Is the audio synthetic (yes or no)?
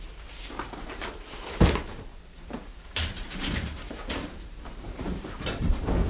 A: yes